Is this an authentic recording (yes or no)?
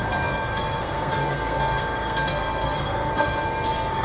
no